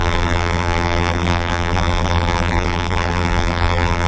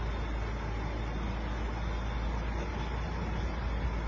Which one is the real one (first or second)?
second